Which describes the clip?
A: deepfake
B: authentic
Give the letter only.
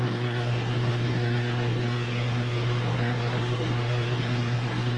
A